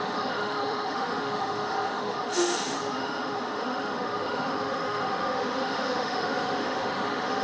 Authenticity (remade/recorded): remade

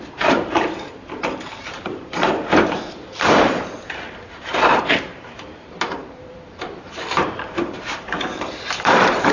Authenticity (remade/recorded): remade